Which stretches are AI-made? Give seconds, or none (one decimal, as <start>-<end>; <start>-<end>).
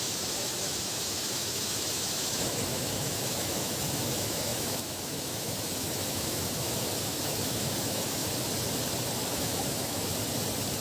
0.0-8.2; 9.3-10.1